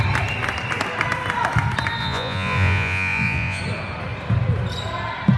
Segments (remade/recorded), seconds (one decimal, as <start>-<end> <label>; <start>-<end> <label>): 0.0-2.0 recorded; 2.0-3.6 remade; 3.6-5.4 recorded